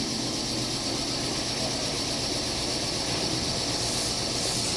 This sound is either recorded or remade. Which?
recorded